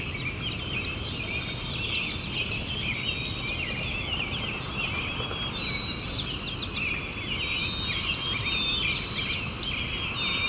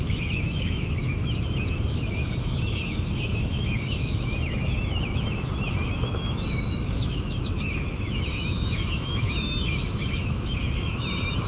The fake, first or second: second